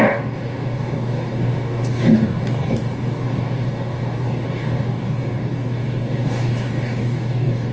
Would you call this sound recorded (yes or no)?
no